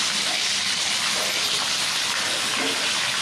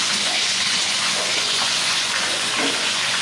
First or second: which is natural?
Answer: first